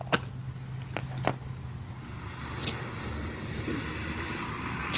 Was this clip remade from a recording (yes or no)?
no